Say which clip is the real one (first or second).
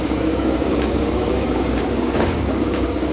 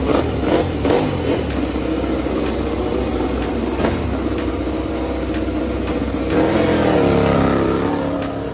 second